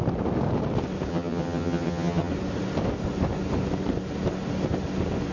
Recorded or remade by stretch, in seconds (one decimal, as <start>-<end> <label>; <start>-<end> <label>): 0.0-1.1 recorded; 1.1-2.3 remade; 2.3-5.3 recorded